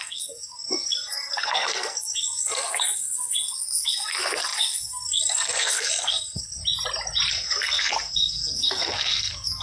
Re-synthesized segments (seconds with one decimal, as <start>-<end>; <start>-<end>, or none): 0.0-6.6; 7.3-9.6